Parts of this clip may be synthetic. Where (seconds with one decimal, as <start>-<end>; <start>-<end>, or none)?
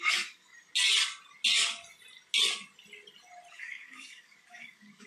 0.0-0.5; 3.5-5.1